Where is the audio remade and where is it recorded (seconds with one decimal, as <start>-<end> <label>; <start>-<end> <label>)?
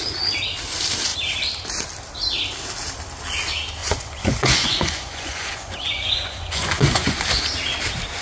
0.0-3.8 recorded; 3.8-7.2 remade; 7.2-8.2 recorded